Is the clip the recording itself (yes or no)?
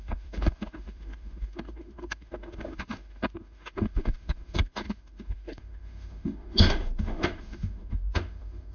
no